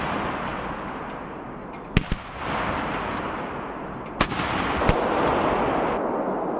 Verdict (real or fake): real